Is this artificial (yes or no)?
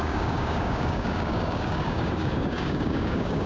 yes